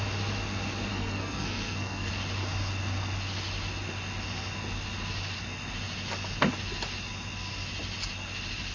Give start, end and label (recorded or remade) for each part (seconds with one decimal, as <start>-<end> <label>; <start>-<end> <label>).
0.0-0.9 recorded; 0.9-2.1 remade; 2.1-8.7 recorded